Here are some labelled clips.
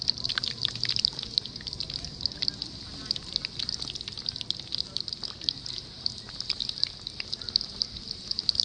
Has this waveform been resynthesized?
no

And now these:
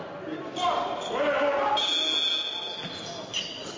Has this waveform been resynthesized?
no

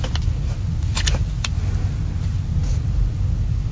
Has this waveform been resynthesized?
no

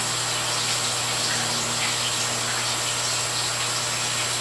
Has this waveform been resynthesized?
no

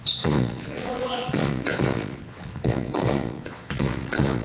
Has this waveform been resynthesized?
yes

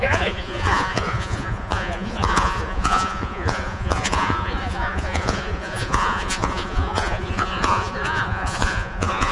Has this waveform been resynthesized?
yes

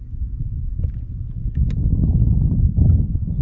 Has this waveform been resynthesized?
no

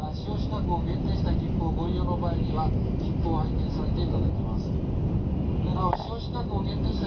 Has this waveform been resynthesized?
no